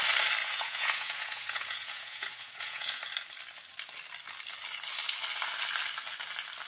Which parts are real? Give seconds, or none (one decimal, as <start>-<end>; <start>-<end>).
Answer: 0.0-0.4; 3.0-6.7